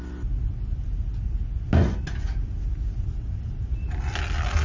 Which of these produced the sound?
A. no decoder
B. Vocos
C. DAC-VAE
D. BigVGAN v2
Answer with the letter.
A